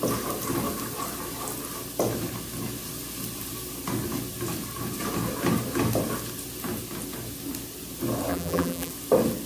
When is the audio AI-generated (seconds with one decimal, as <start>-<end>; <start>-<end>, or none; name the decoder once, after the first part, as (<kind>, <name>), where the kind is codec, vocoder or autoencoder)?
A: 8.3-8.9 (vocoder, BigVGAN v2)